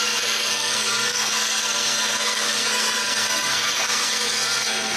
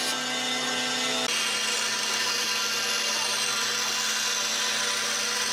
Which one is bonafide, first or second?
second